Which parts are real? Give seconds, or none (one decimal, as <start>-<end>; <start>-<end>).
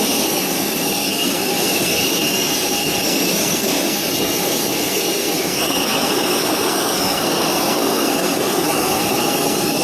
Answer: none